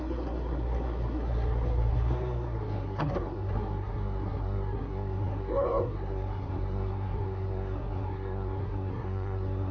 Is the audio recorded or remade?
remade